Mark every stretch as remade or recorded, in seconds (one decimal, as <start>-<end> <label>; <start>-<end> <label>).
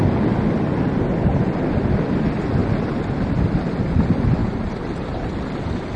0.0-4.4 recorded; 4.4-5.2 remade; 5.2-6.0 recorded